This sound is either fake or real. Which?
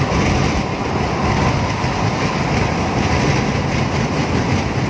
real